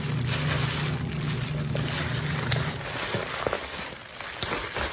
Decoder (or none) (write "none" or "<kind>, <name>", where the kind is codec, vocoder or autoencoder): none